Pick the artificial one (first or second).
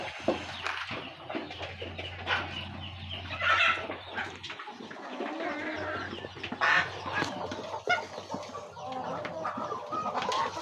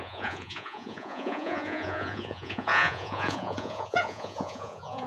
second